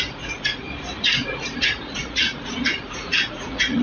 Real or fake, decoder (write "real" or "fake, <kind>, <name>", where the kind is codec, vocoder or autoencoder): fake, vocoder, Vocos